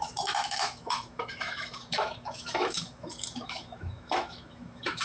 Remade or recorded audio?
remade